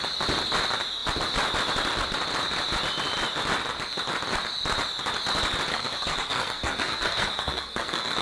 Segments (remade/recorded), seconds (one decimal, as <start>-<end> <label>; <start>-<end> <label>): 0.0-5.7 recorded; 5.7-8.2 remade